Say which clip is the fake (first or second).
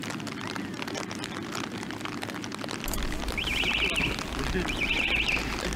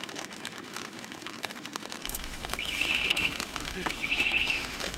second